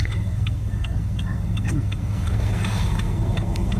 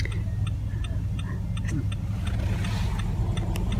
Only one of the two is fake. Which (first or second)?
first